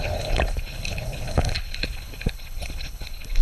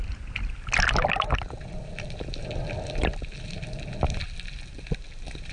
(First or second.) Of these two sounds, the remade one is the first